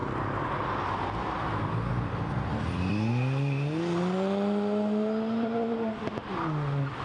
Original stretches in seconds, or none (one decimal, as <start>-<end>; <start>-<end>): 0.0-1.9; 2.9-7.0